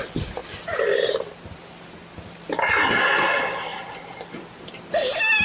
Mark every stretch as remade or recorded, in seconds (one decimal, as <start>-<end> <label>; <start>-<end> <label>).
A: 0.0-5.4 recorded

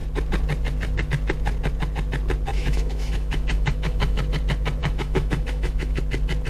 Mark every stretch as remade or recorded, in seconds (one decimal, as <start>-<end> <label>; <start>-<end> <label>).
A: 0.0-2.5 recorded; 2.5-4.2 remade; 4.2-4.8 recorded; 4.8-6.0 remade; 6.0-6.5 recorded

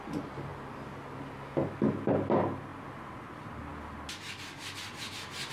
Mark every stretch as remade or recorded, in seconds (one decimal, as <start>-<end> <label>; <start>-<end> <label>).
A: 0.0-5.5 recorded